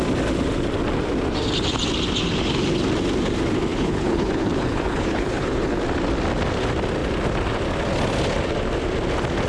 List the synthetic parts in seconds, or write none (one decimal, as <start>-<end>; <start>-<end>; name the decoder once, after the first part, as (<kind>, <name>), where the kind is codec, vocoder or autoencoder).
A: 3.7-5.8 (codec, HILCodec)